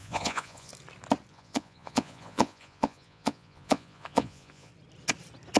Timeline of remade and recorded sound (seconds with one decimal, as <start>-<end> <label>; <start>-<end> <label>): 0.0-0.7 remade; 0.7-1.3 recorded; 1.3-4.7 remade; 4.7-5.6 recorded

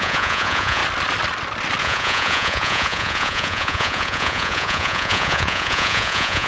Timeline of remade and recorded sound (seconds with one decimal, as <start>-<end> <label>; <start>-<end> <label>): 0.0-0.8 remade; 0.8-1.8 recorded; 1.8-6.5 remade